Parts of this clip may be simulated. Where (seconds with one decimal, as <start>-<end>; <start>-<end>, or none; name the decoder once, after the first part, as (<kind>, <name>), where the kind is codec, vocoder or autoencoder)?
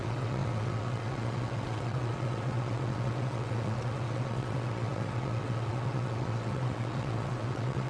0.0-7.9 (vocoder, WaveNeXt)